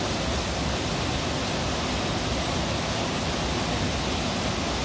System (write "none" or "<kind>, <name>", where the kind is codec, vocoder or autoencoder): none